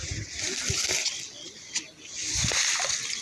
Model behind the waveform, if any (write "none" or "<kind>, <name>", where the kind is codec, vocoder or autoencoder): none